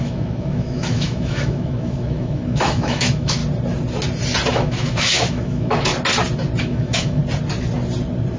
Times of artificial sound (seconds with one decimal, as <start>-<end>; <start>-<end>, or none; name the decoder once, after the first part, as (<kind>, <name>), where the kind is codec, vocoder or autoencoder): 0.0-3.4 (autoencoder, DAC-VAE); 4.5-5.9; 6.6-7.2

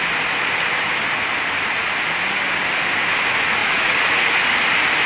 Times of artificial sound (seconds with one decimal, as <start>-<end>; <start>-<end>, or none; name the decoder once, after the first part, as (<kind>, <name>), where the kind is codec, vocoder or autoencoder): 3.6-4.3 (vocoder, Vocos)

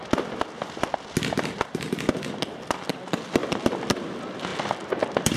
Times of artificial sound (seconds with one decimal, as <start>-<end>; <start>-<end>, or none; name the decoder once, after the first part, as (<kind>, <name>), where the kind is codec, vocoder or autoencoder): 0.0-3.4 (vocoder, BigVGAN v2); 4.1-5.4

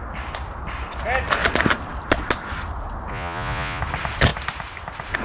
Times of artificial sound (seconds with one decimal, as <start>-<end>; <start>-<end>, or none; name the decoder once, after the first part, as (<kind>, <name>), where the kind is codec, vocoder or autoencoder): 3.1-3.8 (vocoder, Vocos)